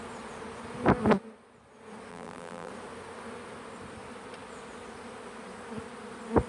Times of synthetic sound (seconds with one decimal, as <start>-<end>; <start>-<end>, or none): 2.1-2.7